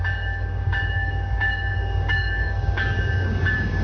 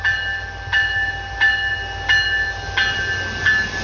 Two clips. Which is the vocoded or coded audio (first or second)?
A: first